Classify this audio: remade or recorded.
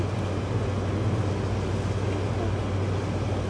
recorded